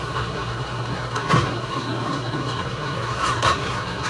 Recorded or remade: remade